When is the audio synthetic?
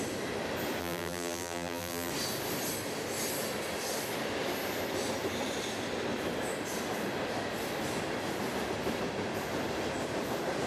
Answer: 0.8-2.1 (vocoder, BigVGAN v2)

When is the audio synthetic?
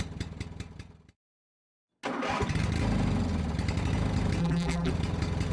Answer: 4.4-4.9 (vocoder, BigVGAN v2)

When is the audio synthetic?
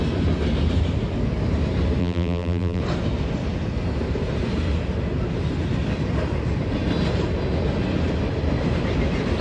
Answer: 2.0-2.8 (vocoder, BigVGAN v2)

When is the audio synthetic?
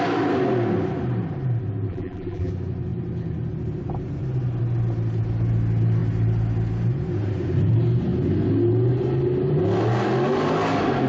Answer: 1.9-2.5 (vocoder, BigVGAN v2)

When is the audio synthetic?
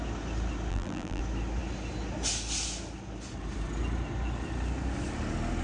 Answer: 0.7-1.2 (vocoder, BigVGAN v2)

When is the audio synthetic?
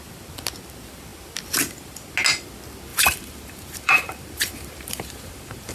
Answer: 2.9-5.7 (vocoder, BigVGAN v2)